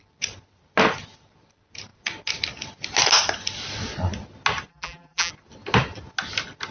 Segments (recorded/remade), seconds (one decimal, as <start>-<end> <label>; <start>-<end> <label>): 0.0-4.7 recorded; 4.7-5.3 remade; 5.3-6.7 recorded